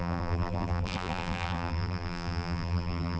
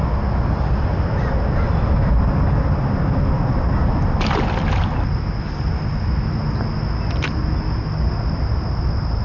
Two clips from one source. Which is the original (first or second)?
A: second